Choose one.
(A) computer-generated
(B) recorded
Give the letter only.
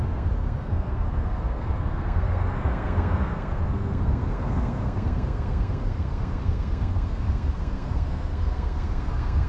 A